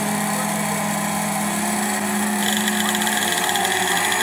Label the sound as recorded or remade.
recorded